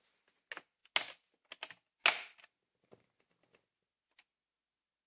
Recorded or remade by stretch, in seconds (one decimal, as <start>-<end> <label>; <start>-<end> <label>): 0.0-5.1 recorded